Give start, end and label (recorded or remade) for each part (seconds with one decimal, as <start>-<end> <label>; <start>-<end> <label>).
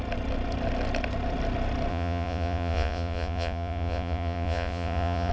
0.0-1.9 recorded; 1.9-5.3 remade